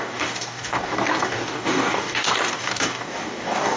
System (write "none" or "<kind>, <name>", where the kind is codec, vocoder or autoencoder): codec, DAC